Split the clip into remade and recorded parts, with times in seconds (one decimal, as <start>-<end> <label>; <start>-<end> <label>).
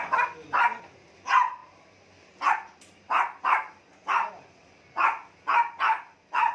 0.0-6.5 recorded